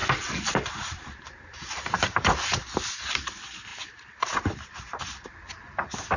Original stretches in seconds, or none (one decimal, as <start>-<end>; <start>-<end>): 3.1-3.7; 5.0-6.2